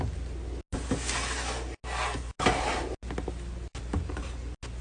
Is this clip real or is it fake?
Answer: real